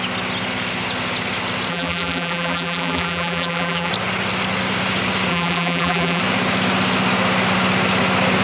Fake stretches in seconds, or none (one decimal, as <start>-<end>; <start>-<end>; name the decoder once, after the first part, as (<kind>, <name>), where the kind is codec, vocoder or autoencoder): 1.7-3.9 (vocoder, BigVGAN v2); 5.3-6.2